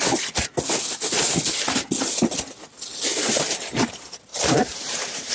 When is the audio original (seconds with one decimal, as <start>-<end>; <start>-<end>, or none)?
0.0-3.1; 3.9-4.3